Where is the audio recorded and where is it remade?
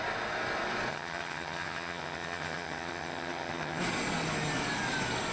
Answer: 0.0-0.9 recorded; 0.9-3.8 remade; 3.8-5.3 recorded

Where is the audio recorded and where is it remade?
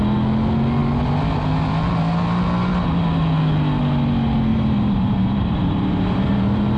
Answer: 0.0-4.5 recorded; 4.5-6.8 remade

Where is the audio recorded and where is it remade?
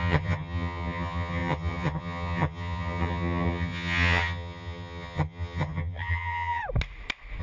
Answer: 0.0-6.6 remade; 6.6-7.4 recorded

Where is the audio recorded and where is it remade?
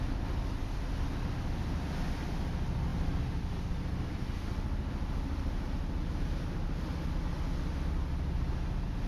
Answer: 0.0-9.1 recorded